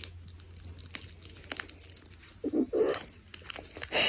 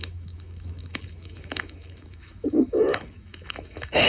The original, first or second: first